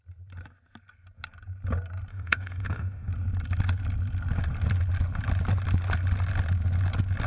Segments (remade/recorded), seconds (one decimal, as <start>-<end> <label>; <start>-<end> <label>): 0.0-2.1 recorded; 2.1-3.1 remade; 3.1-7.3 recorded